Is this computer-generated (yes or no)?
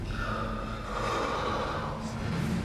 no